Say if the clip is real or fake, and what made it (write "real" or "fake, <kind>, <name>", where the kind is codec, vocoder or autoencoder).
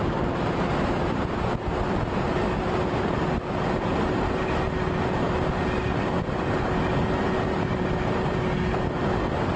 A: real